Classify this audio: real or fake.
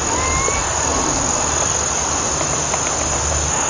real